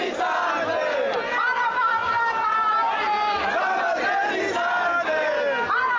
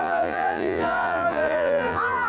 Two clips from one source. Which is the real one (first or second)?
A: first